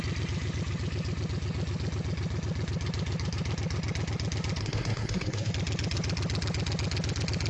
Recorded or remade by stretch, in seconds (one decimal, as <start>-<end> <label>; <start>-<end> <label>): 0.0-4.6 recorded; 4.6-5.5 remade; 5.5-7.5 recorded